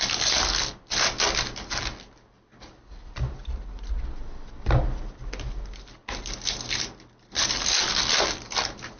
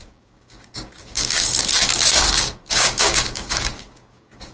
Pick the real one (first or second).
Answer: first